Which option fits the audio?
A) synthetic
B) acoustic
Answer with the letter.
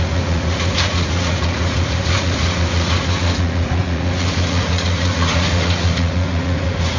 A